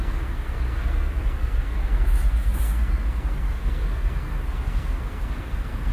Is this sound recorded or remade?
remade